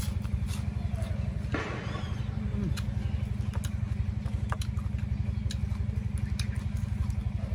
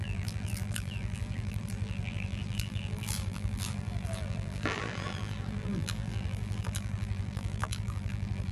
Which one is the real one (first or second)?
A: first